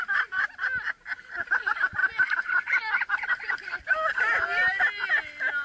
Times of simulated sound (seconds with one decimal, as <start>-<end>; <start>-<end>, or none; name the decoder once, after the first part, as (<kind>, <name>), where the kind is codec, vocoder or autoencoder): none